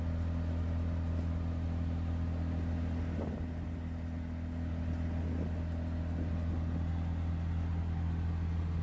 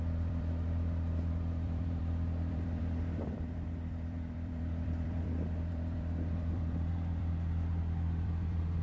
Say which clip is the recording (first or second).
first